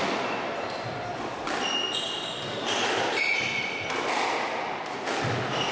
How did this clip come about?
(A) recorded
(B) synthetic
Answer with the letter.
A